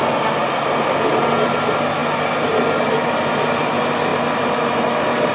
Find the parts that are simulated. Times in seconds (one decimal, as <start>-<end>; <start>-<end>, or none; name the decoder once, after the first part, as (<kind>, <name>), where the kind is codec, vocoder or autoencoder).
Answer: none